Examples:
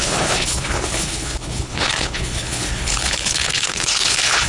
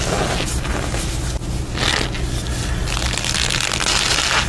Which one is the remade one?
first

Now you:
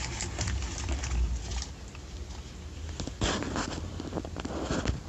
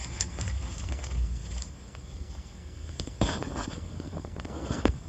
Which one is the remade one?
second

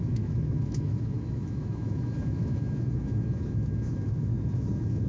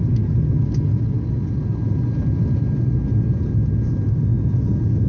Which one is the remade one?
first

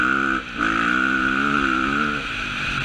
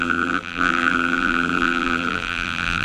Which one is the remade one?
second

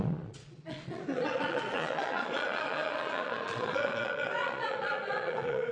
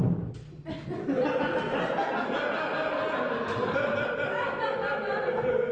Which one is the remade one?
first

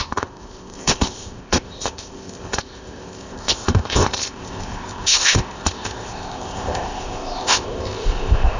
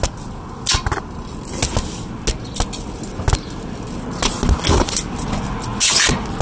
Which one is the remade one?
first